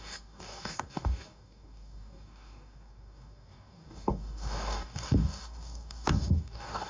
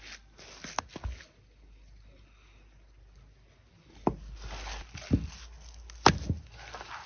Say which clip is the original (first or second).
second